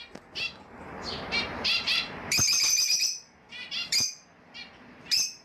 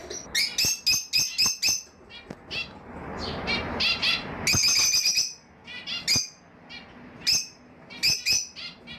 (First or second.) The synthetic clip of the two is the first